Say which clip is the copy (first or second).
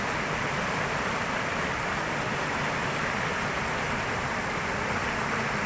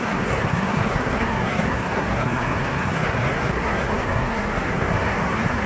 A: second